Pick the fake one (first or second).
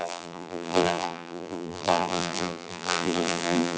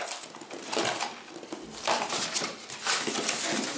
first